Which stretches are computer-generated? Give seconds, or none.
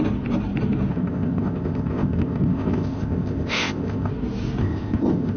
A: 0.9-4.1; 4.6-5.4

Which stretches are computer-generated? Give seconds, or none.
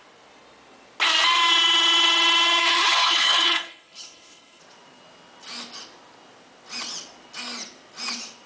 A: 2.6-4.6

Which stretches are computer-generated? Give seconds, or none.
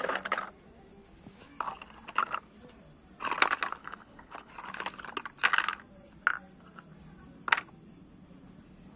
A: 3.8-4.5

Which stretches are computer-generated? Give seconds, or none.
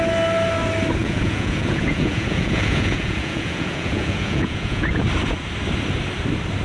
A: 1.0-5.0